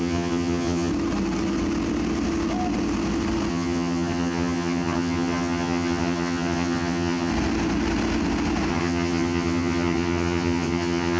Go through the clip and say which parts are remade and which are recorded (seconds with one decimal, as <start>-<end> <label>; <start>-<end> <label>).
0.0-0.9 remade; 0.9-3.5 recorded; 3.5-7.3 remade; 7.3-8.7 recorded; 8.7-11.2 remade